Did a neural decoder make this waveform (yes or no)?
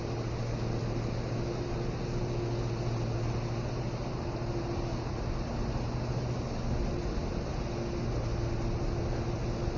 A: no